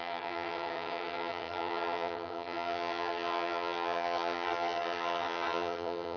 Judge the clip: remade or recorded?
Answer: remade